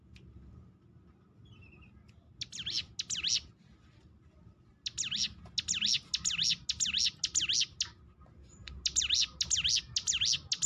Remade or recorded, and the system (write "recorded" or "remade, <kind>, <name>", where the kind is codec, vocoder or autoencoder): recorded